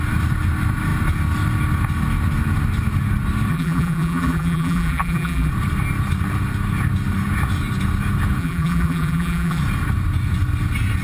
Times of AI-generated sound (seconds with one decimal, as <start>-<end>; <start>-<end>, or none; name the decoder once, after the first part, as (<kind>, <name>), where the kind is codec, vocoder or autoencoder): 3.5-5.5 (vocoder, BigVGAN v2); 8.4-9.6